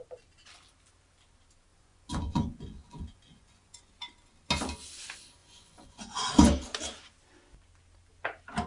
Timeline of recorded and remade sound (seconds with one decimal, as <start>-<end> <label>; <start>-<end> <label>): 0.0-1.7 recorded; 1.7-3.9 remade; 3.9-5.4 recorded; 5.4-6.3 remade; 6.3-8.7 recorded